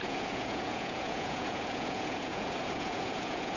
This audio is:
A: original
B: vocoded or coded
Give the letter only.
B